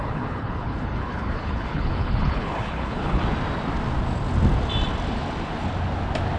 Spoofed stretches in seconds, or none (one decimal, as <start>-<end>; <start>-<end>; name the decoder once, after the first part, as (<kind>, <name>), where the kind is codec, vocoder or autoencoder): 0.0-3.2 (codec, HILCodec)